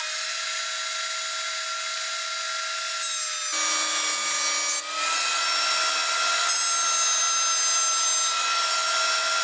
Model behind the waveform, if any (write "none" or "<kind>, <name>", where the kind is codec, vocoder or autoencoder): none